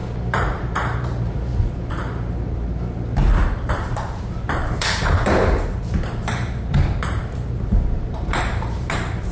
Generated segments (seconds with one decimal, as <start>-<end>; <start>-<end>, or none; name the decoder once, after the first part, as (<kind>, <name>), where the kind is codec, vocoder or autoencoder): 0.0-9.3 (vocoder, BigVGAN v2)